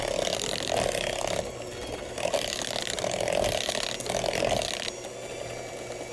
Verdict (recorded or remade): recorded